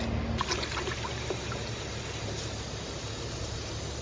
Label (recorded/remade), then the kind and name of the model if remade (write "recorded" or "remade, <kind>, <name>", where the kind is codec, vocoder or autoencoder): recorded